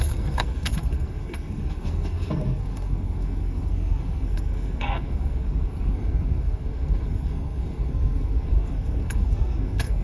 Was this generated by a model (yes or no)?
yes